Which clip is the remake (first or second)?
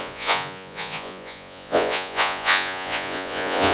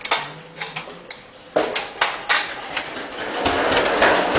first